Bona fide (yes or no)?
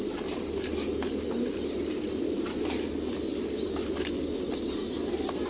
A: yes